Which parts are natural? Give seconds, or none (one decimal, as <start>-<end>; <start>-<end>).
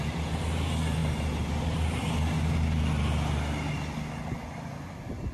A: 0.0-5.3